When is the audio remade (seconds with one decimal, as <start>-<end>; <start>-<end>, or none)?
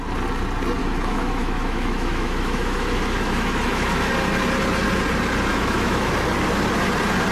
0.8-4.1; 5.5-6.1